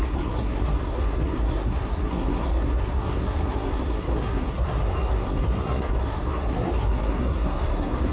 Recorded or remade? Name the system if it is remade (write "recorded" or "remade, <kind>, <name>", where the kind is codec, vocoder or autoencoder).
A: remade, codec, SNAC